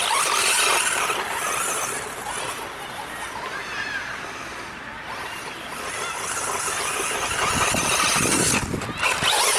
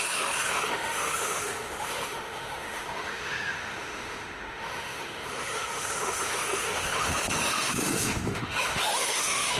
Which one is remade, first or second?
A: second